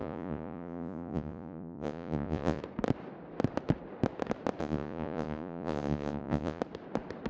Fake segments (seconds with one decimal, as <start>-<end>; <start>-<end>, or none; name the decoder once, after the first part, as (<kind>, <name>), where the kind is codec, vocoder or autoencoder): 0.0-2.6 (vocoder, Vocos); 4.6-6.6